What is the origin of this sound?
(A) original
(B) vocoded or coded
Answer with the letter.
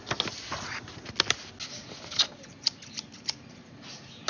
A